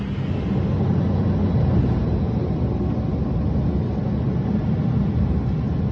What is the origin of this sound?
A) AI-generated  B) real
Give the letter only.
B